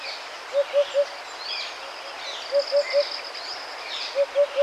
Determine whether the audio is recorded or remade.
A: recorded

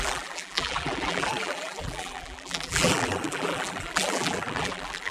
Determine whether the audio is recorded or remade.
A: remade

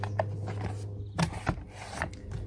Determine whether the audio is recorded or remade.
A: recorded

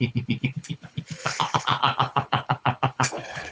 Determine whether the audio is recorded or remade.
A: remade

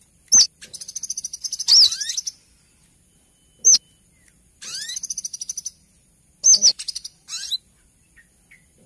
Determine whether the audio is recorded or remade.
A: recorded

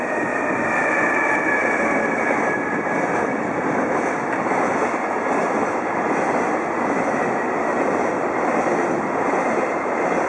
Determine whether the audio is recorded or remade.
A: recorded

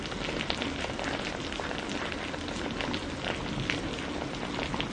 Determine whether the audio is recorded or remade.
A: recorded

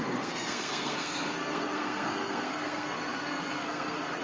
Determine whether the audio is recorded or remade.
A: remade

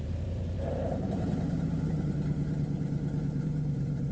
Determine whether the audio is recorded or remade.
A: remade